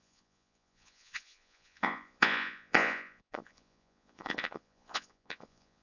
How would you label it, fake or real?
fake